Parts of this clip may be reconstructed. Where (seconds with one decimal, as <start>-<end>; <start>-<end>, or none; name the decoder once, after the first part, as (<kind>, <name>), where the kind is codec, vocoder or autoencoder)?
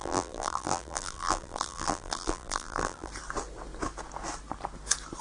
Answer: 0.0-3.1 (vocoder, BigVGAN v2)